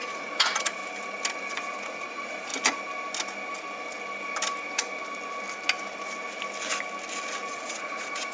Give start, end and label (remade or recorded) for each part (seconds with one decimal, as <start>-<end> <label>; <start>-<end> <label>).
0.0-0.8 remade; 0.8-1.5 recorded; 1.5-2.5 remade; 2.5-7.5 recorded; 7.5-8.3 remade